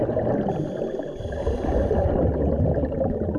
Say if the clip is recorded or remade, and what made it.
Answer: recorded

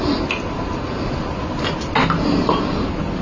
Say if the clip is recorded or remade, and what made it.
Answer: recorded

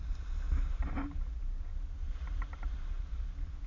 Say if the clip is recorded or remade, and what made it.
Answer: recorded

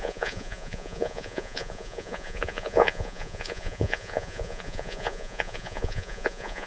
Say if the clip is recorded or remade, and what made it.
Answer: remade, vocoder, Vocos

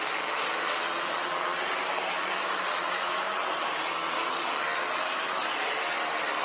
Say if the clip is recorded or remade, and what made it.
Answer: recorded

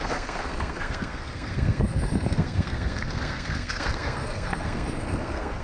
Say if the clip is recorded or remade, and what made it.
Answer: remade, codec, SNAC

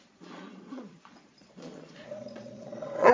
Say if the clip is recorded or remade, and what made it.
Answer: remade, vocoder, Vocos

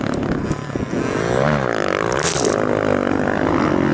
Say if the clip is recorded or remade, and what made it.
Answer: recorded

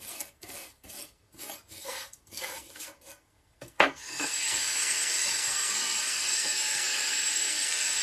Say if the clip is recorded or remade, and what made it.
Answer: remade, codec, SNAC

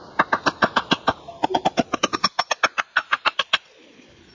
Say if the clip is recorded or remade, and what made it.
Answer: recorded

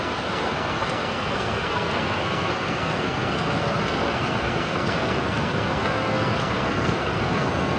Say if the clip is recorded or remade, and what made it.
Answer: remade, codec, SNAC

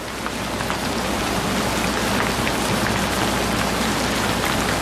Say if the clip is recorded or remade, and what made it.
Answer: recorded